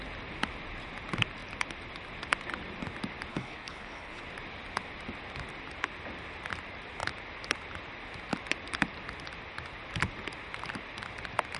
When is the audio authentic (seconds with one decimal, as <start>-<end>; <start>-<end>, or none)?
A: 0.0-3.3; 4.2-11.6